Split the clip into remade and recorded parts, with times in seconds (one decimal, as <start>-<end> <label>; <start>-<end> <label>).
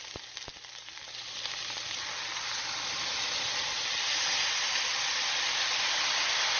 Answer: 0.0-6.6 recorded